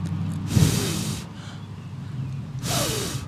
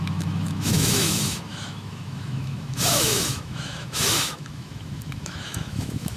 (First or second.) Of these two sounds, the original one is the first